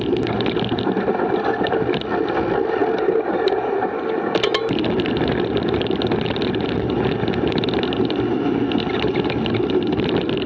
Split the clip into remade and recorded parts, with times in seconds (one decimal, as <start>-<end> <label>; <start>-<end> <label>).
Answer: 0.0-10.5 recorded